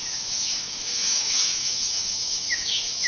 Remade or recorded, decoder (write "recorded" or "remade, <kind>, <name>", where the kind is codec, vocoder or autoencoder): remade, autoencoder, DAC-VAE